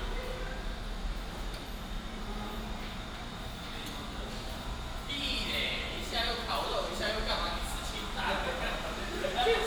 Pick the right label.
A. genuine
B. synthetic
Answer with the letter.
B